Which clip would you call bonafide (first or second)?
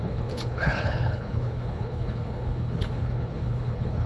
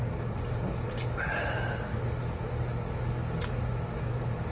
second